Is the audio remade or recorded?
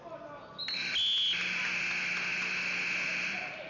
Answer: recorded